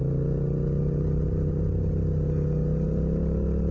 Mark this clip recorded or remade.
recorded